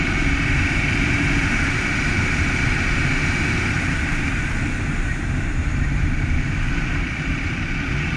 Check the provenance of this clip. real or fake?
fake